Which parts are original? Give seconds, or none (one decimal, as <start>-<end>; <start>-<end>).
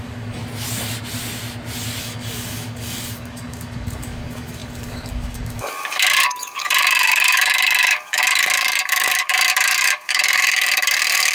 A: 0.4-2.0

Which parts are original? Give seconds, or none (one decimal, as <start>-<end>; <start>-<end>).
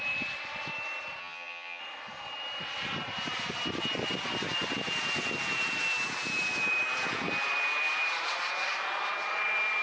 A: 0.0-1.2; 1.8-9.8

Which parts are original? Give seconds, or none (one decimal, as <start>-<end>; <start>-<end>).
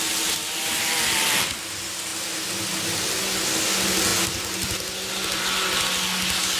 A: 0.0-6.6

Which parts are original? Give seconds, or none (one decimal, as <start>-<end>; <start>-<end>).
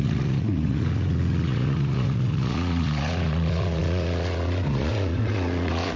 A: none